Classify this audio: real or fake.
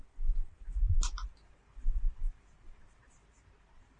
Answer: real